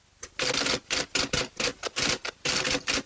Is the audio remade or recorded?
recorded